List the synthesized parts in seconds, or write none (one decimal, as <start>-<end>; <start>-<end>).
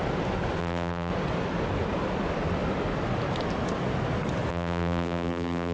0.6-1.1; 4.5-5.7